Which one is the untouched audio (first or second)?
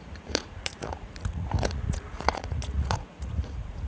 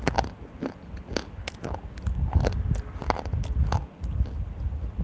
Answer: second